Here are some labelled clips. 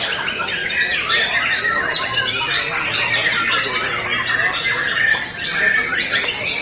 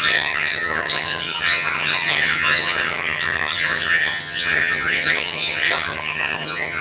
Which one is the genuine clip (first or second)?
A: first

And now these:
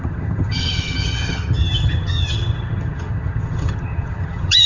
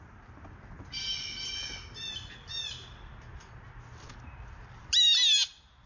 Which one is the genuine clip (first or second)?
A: second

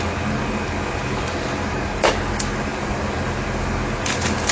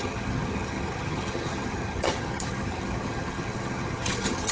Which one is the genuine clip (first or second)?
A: first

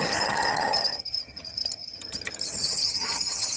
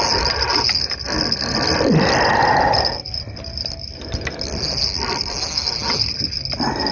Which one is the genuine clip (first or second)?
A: second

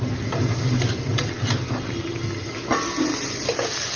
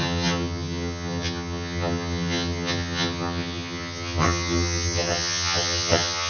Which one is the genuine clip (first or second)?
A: first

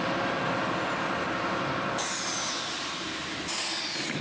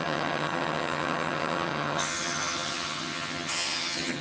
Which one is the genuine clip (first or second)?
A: first